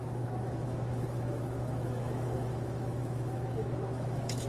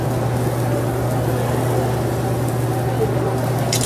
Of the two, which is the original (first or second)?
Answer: second